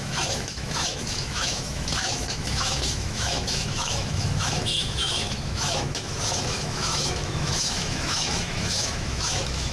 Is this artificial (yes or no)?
yes